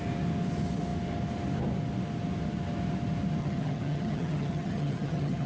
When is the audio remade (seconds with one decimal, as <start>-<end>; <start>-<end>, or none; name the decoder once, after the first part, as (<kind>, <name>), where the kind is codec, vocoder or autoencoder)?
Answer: 3.4-5.5 (vocoder, HiFi-GAN)